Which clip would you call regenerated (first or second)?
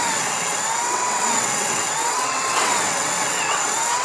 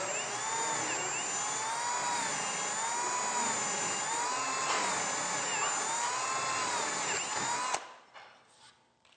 first